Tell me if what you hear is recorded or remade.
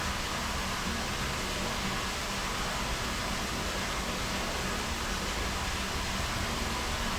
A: recorded